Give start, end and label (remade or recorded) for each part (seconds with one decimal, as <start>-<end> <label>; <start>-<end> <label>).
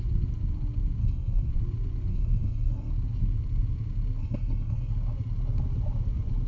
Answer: 0.0-1.0 recorded; 1.0-1.5 remade; 1.5-2.1 recorded; 2.1-2.9 remade; 2.9-4.2 recorded; 4.2-4.9 remade; 4.9-6.5 recorded